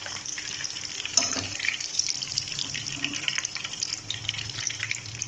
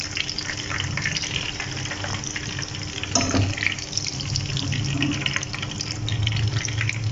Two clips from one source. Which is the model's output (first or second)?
first